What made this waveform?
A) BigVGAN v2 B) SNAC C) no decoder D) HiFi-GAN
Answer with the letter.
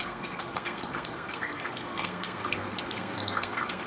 B